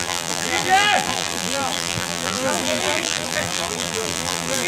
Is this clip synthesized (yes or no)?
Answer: yes